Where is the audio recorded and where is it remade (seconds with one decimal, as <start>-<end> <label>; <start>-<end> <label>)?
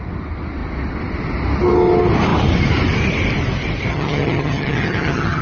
0.0-3.9 recorded; 3.9-5.4 remade